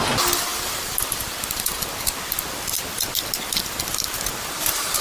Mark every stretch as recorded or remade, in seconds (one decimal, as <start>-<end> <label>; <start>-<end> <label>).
0.0-5.0 recorded